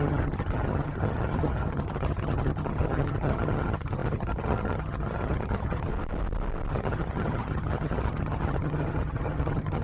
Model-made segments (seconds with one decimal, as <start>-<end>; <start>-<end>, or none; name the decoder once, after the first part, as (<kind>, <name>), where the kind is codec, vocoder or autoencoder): 0.0-5.9 (vocoder, HiFi-GAN); 6.7-9.8